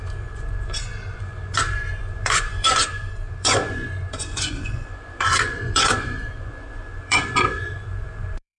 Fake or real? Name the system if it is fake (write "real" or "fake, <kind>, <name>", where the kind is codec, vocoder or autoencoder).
fake, vocoder, Vocos